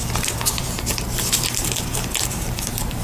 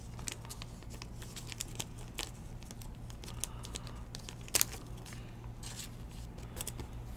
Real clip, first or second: second